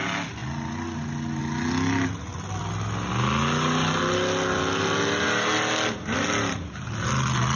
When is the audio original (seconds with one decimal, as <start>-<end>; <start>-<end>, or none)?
0.0-7.6